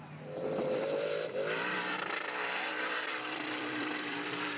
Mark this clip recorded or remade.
remade